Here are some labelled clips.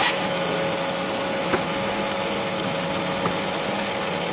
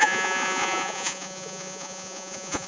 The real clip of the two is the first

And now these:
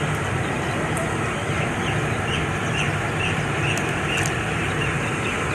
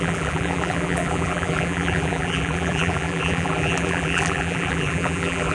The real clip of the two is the first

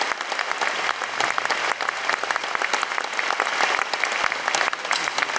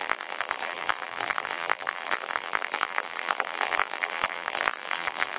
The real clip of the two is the first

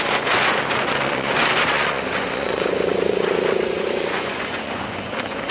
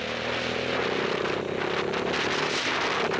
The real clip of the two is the second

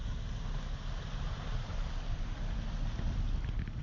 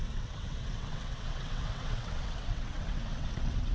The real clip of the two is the first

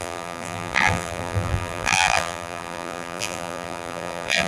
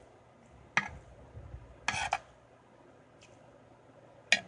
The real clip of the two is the second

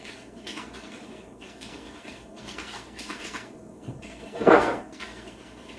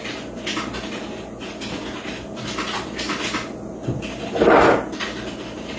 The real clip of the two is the second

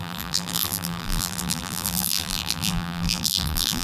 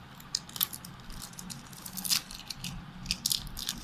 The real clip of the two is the second